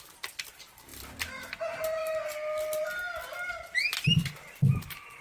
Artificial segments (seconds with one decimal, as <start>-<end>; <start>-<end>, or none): none